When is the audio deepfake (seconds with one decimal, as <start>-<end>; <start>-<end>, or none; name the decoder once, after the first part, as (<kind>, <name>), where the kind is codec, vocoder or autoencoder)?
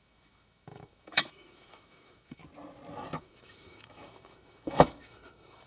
0.0-2.4 (autoencoder, DAC-VAE); 3.2-5.7